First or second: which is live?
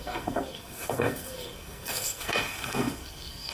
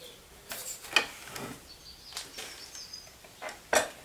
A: second